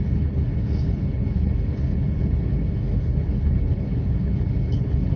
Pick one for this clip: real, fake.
fake